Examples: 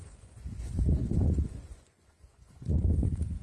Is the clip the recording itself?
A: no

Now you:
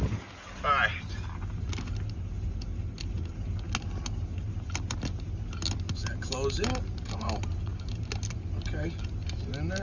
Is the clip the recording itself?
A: yes